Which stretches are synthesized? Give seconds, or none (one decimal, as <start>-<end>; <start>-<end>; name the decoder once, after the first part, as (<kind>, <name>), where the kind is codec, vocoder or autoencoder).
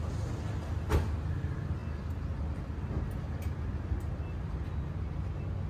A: none